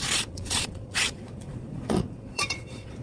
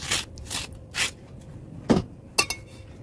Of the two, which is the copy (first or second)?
first